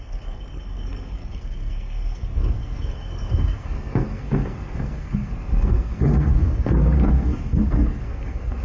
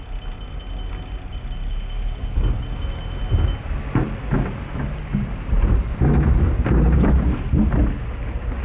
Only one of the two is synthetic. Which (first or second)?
first